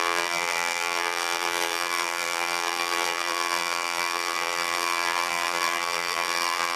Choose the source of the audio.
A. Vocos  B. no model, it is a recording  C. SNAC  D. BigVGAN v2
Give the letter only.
D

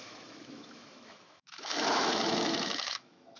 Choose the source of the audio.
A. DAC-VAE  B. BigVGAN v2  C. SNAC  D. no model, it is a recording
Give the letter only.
A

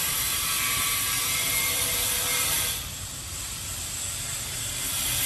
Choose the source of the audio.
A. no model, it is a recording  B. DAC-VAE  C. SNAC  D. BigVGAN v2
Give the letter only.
D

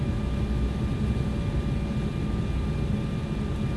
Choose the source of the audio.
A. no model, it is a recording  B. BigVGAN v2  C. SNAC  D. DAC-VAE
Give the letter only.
A